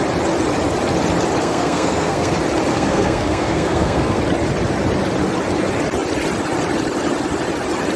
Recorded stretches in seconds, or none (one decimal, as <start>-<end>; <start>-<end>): 0.0-1.4; 2.3-2.7; 4.2-8.0